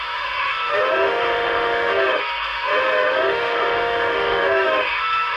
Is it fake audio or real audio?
fake